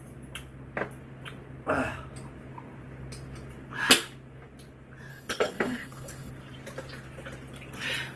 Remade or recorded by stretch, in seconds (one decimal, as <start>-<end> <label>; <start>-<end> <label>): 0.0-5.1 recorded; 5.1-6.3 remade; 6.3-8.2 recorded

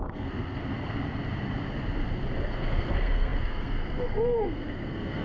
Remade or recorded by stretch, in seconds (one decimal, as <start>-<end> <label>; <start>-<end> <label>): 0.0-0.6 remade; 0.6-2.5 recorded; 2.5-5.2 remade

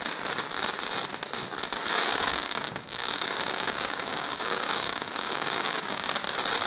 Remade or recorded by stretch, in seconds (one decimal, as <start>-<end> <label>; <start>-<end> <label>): 0.0-2.1 recorded; 2.1-6.1 remade; 6.1-6.7 recorded

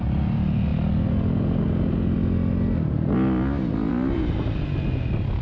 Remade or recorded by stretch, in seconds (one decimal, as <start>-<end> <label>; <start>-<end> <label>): 0.0-5.4 recorded

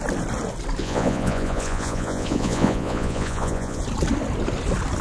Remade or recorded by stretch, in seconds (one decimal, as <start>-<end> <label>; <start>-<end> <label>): 0.0-0.8 recorded; 0.8-3.8 remade; 3.8-5.0 recorded